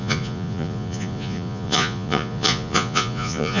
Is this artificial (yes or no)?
yes